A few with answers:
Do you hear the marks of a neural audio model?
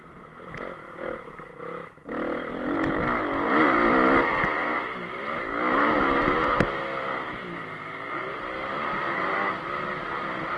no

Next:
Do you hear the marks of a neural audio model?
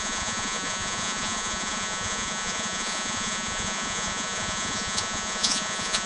yes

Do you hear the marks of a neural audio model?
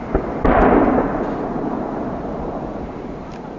no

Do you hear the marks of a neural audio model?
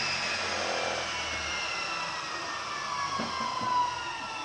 no